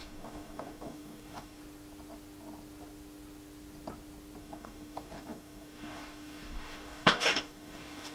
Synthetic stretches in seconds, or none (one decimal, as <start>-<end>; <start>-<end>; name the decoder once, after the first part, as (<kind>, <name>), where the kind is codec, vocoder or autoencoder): 0.0-1.6 (codec, DAC); 4.4-8.1